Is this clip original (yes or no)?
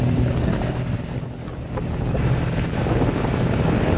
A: yes